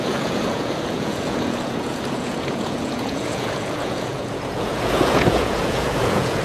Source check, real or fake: fake